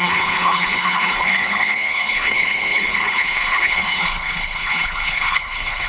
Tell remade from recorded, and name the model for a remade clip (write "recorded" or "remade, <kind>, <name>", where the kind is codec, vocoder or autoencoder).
remade, codec, HILCodec